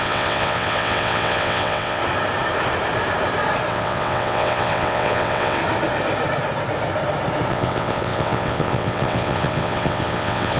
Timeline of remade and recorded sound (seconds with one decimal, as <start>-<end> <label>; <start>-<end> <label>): 0.0-2.0 remade; 2.0-3.7 recorded; 3.7-5.6 remade; 5.6-7.5 recorded; 7.5-10.6 remade